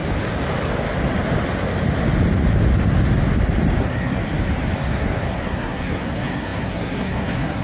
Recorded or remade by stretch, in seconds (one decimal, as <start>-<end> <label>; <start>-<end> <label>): 0.0-3.8 recorded; 3.8-4.2 remade; 4.2-4.8 recorded; 4.8-7.6 remade